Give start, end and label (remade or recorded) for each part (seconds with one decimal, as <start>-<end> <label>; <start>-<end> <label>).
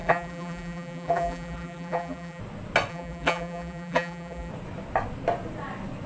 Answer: 0.0-2.4 remade; 2.4-2.9 recorded; 2.9-4.5 remade; 4.5-6.1 recorded